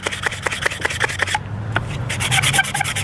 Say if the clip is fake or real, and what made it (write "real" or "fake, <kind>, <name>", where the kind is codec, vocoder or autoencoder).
real